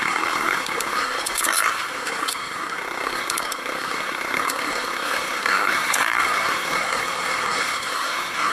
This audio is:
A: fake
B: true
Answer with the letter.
A